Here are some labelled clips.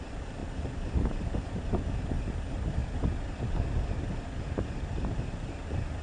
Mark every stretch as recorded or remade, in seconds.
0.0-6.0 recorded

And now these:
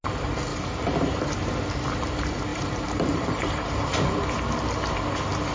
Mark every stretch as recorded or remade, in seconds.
0.0-0.5 recorded; 0.5-1.2 remade; 1.2-2.5 recorded; 2.5-4.1 remade; 4.1-5.5 recorded

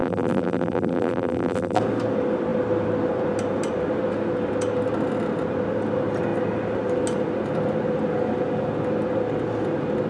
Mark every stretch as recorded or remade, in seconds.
0.0-1.8 remade; 1.8-10.1 recorded

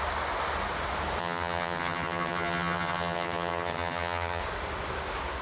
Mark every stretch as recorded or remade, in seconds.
0.0-1.2 recorded; 1.2-4.4 remade; 4.4-5.4 recorded

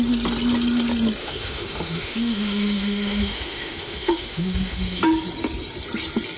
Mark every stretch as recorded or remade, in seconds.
0.0-1.2 recorded; 1.2-5.0 remade; 5.0-6.4 recorded

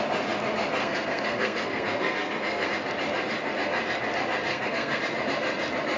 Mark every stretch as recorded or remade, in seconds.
0.0-0.8 recorded; 0.8-2.7 remade; 2.7-4.5 recorded; 4.5-5.0 remade; 5.0-6.0 recorded